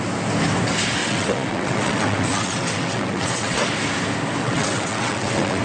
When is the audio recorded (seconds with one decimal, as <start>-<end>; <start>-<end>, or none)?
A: 0.0-1.0; 3.7-4.4